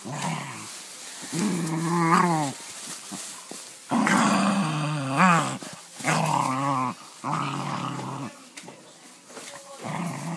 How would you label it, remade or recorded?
recorded